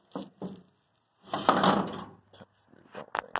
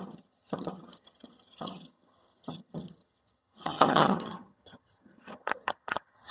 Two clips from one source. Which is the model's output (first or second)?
second